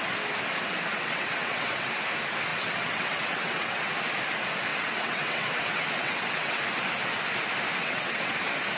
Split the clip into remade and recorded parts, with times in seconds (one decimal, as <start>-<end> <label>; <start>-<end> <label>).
0.0-0.9 recorded; 0.9-1.9 remade; 1.9-2.5 recorded; 2.5-3.9 remade; 3.9-4.7 recorded; 4.7-6.6 remade; 6.6-7.8 recorded; 7.8-8.3 remade; 8.3-8.8 recorded